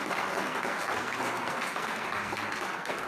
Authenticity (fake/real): fake